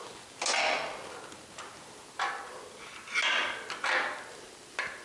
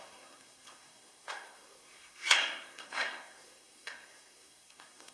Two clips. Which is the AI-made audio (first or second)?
second